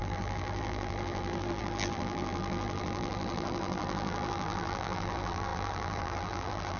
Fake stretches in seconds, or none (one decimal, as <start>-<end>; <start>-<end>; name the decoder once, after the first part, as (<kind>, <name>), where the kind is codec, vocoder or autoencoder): 0.0-6.8 (vocoder, BigVGAN v2)